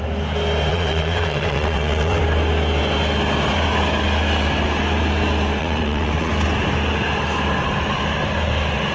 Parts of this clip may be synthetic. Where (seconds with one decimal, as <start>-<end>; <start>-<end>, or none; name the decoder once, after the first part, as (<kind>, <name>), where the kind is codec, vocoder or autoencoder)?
0.7-2.2 (vocoder, WaveNeXt); 5.6-6.3